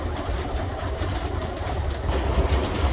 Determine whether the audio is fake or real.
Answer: real